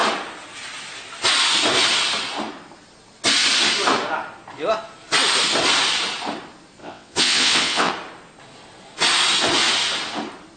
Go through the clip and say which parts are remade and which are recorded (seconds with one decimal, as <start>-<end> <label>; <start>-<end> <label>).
0.0-6.8 recorded; 6.8-7.9 remade; 7.9-10.6 recorded